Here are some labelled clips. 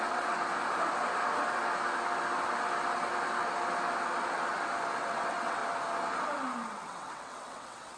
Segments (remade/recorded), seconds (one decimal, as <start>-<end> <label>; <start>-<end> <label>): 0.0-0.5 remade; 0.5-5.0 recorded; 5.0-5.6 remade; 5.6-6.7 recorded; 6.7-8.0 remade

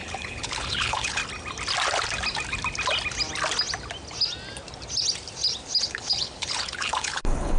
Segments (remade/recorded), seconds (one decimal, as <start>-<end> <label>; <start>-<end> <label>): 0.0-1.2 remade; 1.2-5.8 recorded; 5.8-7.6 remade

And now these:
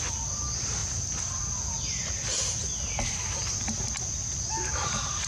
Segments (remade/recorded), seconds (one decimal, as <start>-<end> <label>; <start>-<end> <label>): 0.0-5.3 recorded

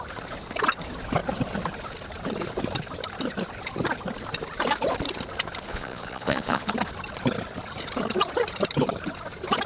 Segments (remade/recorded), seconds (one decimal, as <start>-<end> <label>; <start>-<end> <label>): 0.0-5.7 recorded; 5.7-6.7 remade; 6.7-9.7 recorded

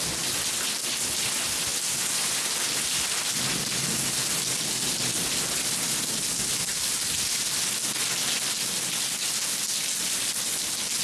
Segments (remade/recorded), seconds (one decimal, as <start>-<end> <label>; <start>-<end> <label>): 0.0-11.0 recorded

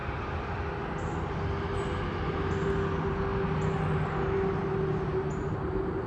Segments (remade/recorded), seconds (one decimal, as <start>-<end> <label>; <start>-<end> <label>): 0.0-6.1 recorded

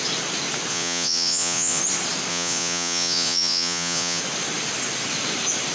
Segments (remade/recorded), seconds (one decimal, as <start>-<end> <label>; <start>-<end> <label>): 0.0-0.7 recorded; 0.7-1.8 remade; 1.8-2.3 recorded; 2.3-4.2 remade; 4.2-5.7 recorded

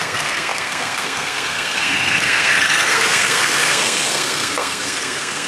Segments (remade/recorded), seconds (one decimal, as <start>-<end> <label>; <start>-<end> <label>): 0.0-5.5 remade